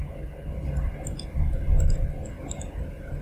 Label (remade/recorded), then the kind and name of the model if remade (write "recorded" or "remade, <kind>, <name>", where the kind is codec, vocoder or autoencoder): recorded